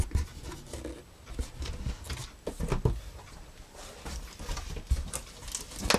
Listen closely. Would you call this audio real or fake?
real